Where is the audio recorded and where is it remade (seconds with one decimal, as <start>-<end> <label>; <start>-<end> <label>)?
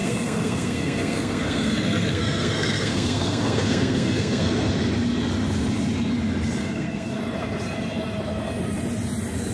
0.0-4.7 remade; 4.7-6.6 recorded; 6.6-7.2 remade; 7.2-9.5 recorded